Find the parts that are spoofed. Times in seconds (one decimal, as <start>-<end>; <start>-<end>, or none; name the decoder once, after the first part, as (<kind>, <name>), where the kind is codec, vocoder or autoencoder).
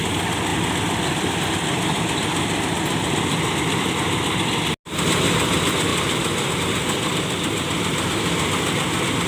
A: 5.9-6.6 (vocoder, BigVGAN v2)